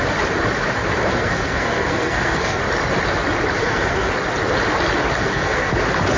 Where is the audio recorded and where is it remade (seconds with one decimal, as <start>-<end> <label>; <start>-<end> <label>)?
0.0-1.1 recorded; 1.1-2.6 remade; 2.6-3.6 recorded; 3.6-4.1 remade; 4.1-5.2 recorded; 5.2-5.7 remade; 5.7-6.2 recorded

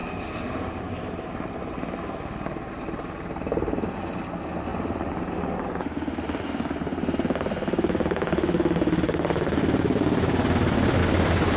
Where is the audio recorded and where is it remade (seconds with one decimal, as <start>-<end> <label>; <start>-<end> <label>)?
0.0-1.6 remade; 1.6-11.6 recorded

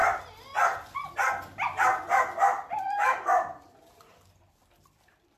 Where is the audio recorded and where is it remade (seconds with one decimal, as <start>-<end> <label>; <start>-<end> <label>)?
0.0-2.7 recorded; 2.7-5.4 remade